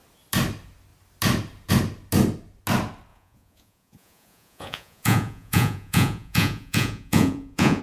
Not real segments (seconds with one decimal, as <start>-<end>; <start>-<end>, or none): 3.1-7.8